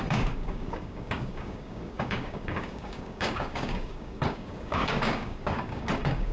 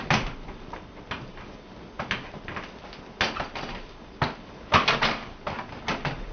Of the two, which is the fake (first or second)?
first